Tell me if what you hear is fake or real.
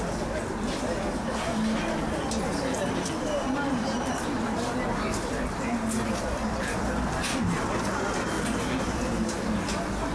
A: real